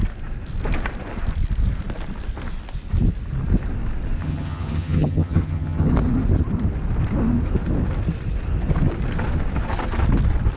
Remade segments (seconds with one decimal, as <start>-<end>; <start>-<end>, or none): 4.2-5.9